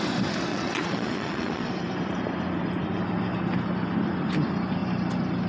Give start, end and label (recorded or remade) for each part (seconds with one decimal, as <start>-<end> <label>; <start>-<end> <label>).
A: 0.0-0.5 recorded; 0.5-1.7 remade; 1.7-5.5 recorded